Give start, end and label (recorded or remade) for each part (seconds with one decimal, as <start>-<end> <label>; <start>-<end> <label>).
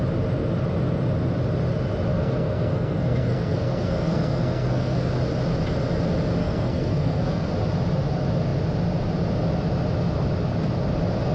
0.0-2.1 recorded; 2.1-5.1 remade; 5.1-6.4 recorded; 6.4-7.5 remade; 7.5-11.3 recorded